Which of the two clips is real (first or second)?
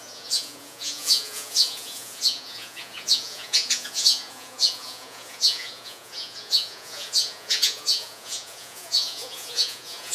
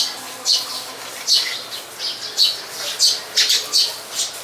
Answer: second